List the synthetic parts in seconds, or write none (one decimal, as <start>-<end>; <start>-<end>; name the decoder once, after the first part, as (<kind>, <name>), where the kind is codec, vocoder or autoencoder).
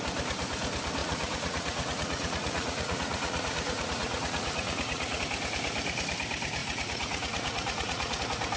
1.0-5.2 (vocoder, Vocos); 6.6-8.2